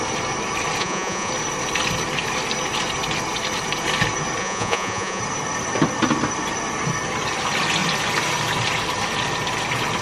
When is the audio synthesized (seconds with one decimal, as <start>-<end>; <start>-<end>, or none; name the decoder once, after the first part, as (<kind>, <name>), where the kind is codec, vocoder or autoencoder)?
0.8-1.3 (vocoder, Vocos); 4.4-5.2